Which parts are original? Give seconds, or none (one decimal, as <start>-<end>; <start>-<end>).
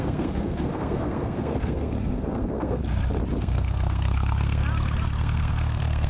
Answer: 2.8-3.4; 4.6-5.2